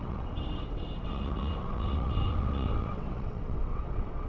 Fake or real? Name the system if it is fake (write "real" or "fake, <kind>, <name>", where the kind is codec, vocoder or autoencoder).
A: fake, vocoder, WaveNeXt